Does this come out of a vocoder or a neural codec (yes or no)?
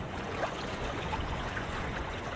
yes